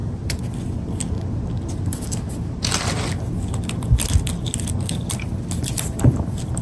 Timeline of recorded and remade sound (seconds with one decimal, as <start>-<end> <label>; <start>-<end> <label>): 0.0-6.6 recorded